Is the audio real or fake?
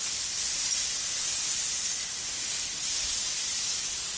real